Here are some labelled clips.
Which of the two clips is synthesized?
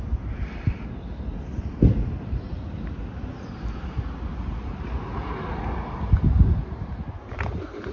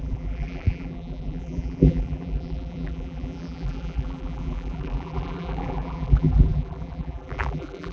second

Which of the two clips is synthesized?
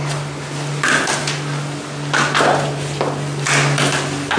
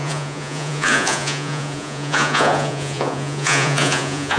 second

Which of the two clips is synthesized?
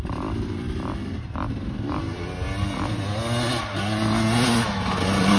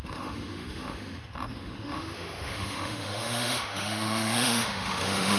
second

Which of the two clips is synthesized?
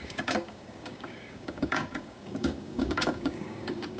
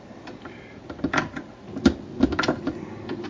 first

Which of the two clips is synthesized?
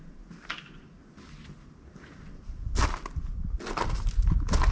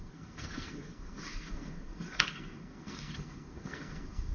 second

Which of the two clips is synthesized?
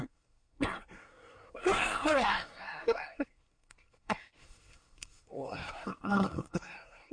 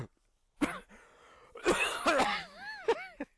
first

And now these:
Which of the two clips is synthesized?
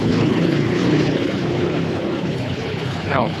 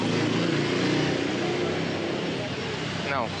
first